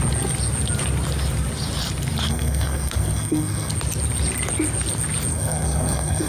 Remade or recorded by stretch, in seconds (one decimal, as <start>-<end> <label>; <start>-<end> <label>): 0.0-2.3 recorded; 2.3-3.7 remade; 3.7-5.3 recorded; 5.3-6.3 remade